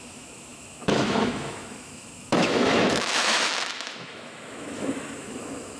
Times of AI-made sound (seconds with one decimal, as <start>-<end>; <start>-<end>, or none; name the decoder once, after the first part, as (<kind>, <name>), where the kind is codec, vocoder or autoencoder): 0.0-5.8 (autoencoder, DAC-VAE)